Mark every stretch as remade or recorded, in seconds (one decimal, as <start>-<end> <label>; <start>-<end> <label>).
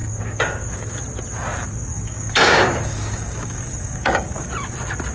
0.0-0.6 remade; 0.6-1.9 recorded; 1.9-4.5 remade; 4.5-5.1 recorded